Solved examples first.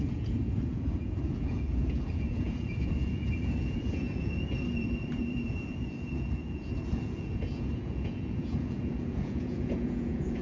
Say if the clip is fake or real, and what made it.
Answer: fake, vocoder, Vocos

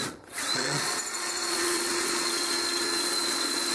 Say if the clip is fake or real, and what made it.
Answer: fake, vocoder, Vocos